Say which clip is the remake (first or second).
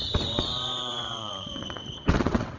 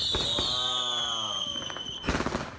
first